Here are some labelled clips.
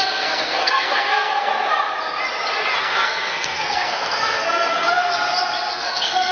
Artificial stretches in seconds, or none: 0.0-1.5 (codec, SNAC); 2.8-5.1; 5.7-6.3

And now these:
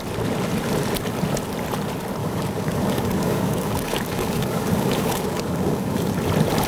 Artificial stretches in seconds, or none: 2.2-6.1 (codec, DAC)

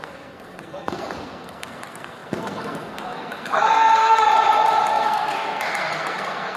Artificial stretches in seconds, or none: 0.0-4.3 (codec, SNAC); 4.9-6.6

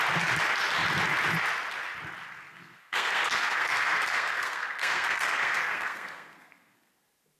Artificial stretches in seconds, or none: 2.5-6.9 (codec, SNAC)

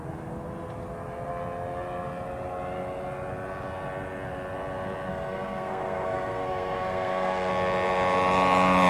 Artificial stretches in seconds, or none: 5.1-7.5 (codec, SNAC)

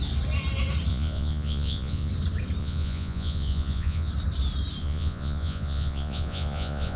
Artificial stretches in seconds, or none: 0.9-2.1 (vocoder, Vocos); 2.6-4.1; 4.8-7.0

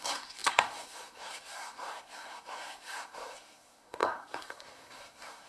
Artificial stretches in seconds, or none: 0.0-5.5 (codec, SNAC)

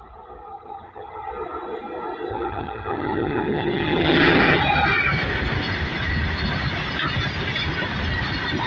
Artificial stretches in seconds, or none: 0.5-1.3 (vocoder, HiFi-GAN); 2.3-4.6